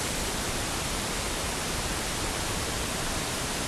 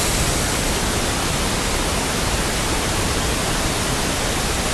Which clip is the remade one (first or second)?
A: first